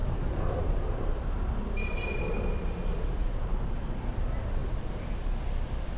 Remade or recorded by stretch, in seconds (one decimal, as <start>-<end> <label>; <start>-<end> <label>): 0.0-2.4 remade; 2.4-3.2 recorded; 3.2-4.0 remade; 4.0-6.0 recorded

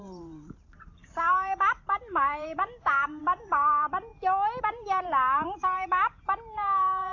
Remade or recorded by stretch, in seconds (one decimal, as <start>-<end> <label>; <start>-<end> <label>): 0.0-4.1 remade; 4.1-4.6 recorded; 4.6-7.1 remade

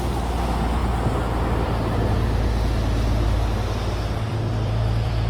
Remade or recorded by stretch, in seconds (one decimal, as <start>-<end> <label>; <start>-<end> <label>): 0.0-0.8 recorded; 0.8-2.1 remade; 2.1-4.3 recorded; 4.3-5.3 remade